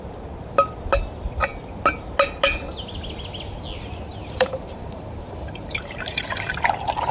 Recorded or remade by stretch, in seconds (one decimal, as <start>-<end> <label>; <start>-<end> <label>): 0.0-4.1 recorded; 4.1-6.5 remade; 6.5-7.1 recorded